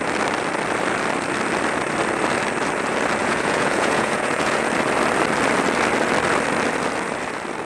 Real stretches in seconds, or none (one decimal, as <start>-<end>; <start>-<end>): 0.0-3.2; 4.7-7.6